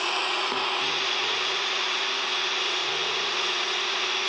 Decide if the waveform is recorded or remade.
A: remade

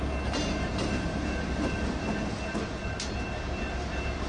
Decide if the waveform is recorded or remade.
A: recorded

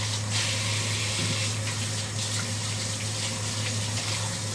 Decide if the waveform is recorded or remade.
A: recorded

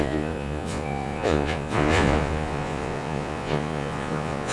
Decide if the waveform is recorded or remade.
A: remade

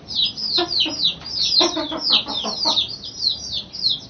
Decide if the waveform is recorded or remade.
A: recorded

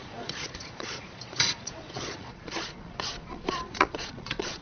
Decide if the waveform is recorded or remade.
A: remade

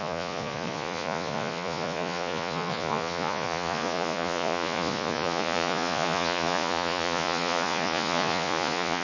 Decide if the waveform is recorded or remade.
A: remade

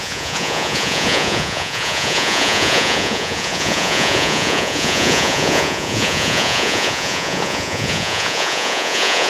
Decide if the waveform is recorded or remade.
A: remade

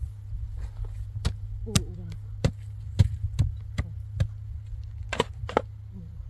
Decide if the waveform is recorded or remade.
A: recorded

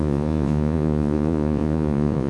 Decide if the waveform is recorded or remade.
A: remade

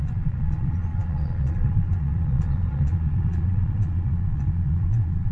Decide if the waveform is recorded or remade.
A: remade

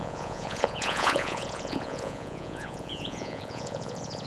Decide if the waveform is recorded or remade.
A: remade